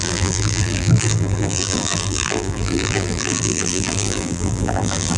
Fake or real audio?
fake